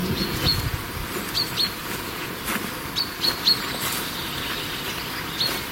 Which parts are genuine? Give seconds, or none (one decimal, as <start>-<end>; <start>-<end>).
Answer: 0.9-1.8; 2.4-5.7